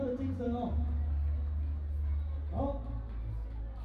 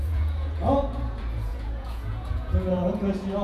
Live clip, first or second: first